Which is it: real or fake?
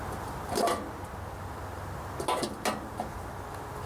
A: real